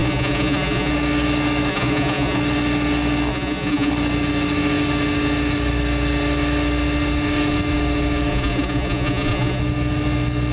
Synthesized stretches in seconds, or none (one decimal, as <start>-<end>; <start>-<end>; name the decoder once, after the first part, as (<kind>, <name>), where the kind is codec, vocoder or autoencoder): 0.0-0.9 (vocoder, Vocos); 1.7-2.4; 3.3-3.9; 8.3-9.6